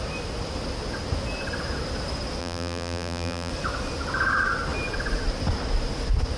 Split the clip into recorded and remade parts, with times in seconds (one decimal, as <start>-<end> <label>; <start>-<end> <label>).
0.0-2.4 recorded; 2.4-3.5 remade; 3.5-6.4 recorded